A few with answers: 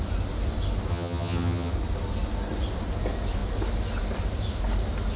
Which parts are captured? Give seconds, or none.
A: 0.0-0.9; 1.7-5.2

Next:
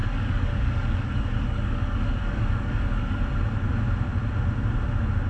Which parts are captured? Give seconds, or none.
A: 3.2-5.3

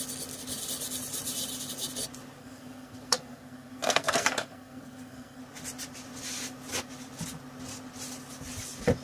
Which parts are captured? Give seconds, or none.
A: 0.0-2.4; 5.4-9.0